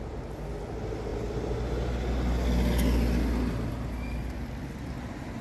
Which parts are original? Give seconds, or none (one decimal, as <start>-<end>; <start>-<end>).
0.0-5.4